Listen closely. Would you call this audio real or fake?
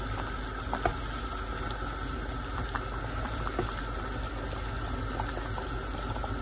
real